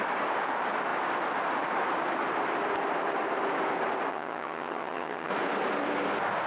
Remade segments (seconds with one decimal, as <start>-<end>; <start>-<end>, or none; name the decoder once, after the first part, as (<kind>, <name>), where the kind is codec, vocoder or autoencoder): 4.1-5.3 (vocoder, HiFi-GAN)